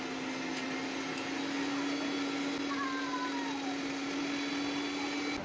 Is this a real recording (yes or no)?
yes